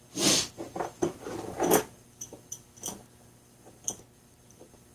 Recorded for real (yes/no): yes